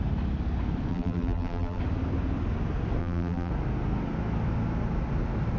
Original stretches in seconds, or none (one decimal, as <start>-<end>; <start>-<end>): 0.0-0.9; 1.8-3.0; 3.5-5.6